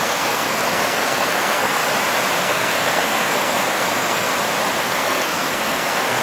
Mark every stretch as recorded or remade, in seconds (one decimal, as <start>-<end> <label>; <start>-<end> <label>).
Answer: 0.0-1.8 remade; 1.8-2.4 recorded; 2.4-4.3 remade; 4.3-4.8 recorded; 4.8-6.2 remade